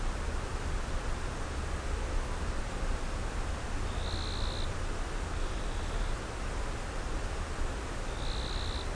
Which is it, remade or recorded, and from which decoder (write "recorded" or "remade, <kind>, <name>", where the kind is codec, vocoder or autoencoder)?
recorded